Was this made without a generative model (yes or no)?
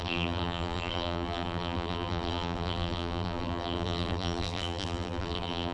no